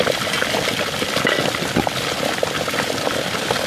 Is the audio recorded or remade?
recorded